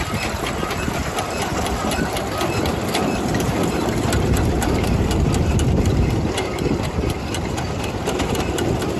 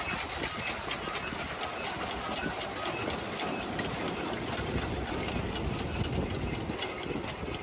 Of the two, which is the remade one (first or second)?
first